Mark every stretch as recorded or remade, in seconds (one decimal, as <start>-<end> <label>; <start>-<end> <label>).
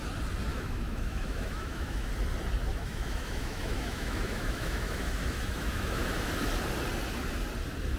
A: 0.0-0.5 recorded; 0.5-2.1 remade; 2.1-2.7 recorded; 2.7-6.3 remade; 6.3-8.0 recorded